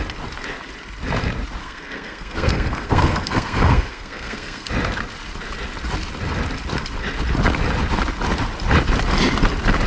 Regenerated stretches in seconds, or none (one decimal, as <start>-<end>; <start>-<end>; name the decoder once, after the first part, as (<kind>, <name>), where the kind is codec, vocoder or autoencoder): 1.6-4.7 (codec, SNAC)